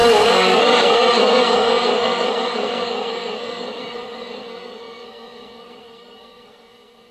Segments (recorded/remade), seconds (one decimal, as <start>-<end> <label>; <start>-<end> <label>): 0.0-7.1 remade